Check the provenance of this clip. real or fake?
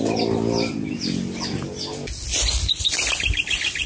real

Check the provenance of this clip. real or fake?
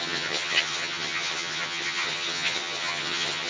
fake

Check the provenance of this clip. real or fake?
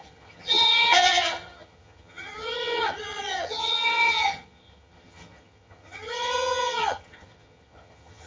fake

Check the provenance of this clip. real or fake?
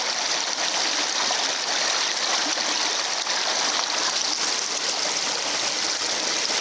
real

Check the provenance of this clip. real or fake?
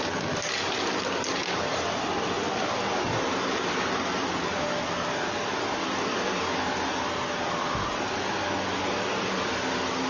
real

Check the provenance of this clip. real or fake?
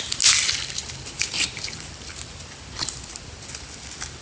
real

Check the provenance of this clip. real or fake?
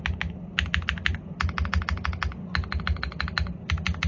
real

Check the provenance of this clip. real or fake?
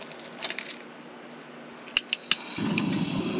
real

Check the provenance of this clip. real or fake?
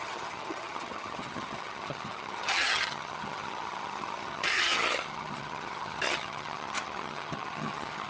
fake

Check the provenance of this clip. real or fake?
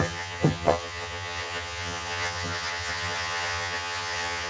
fake